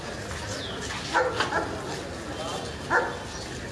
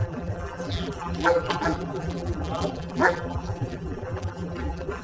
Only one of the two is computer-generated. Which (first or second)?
second